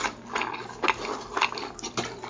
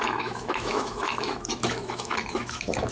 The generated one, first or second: second